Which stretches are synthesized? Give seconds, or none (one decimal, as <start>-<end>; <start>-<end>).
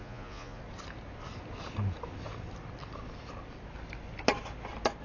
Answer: 0.0-0.6